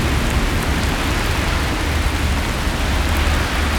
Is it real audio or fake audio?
real